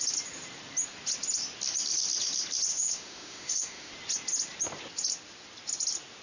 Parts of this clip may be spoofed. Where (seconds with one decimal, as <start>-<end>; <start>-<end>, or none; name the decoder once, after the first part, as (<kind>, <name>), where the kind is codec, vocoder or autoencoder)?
2.7-3.9 (autoencoder, DAC-VAE)

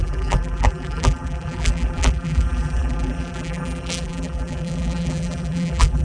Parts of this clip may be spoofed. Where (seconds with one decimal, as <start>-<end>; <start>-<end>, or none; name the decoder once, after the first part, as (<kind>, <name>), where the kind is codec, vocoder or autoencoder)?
0.0-6.0 (vocoder, BigVGAN v2)

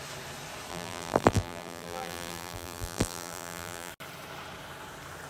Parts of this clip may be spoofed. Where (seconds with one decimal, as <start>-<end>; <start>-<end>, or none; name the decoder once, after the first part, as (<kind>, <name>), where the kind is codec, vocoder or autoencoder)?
0.7-3.9 (vocoder, BigVGAN v2)

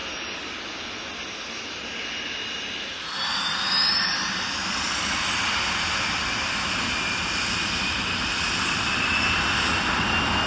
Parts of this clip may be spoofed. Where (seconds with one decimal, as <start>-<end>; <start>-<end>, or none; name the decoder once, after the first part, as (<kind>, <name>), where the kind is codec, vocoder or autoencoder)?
none